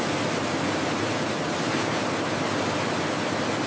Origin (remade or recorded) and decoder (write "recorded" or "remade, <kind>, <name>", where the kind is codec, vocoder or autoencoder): recorded